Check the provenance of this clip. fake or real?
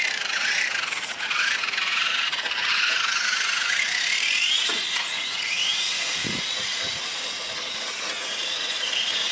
fake